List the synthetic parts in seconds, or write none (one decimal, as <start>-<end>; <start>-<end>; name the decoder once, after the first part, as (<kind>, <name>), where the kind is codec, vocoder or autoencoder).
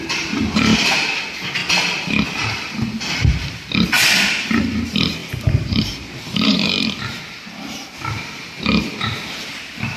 5.2-7.2 (vocoder, BigVGAN v2)